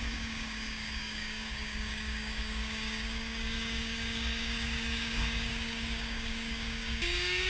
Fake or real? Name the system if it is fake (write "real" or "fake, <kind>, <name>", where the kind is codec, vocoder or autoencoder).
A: fake, codec, DAC